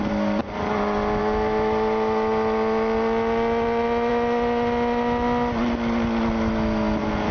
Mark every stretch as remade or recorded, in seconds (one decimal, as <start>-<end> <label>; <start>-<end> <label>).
0.0-7.3 recorded